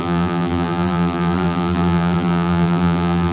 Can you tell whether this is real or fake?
fake